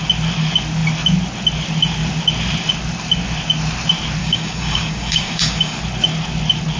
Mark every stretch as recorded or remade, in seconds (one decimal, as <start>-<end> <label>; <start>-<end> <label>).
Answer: 0.0-4.2 recorded; 4.2-5.8 remade; 5.8-6.8 recorded